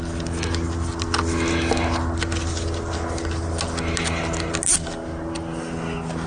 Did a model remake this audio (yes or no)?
no